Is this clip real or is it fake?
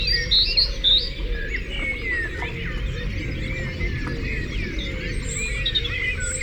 real